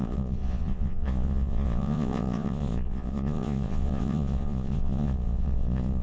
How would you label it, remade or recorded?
remade